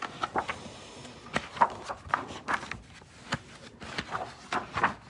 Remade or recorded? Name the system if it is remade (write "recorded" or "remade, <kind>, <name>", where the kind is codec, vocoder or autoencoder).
recorded